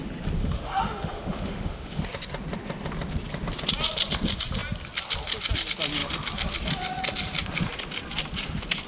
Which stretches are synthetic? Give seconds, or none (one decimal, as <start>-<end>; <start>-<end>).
0.4-2.0

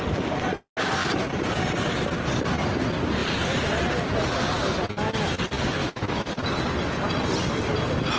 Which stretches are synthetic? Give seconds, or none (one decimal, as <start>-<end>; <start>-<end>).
5.8-6.3

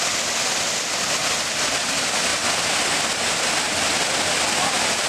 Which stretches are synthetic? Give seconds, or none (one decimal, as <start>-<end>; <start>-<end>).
none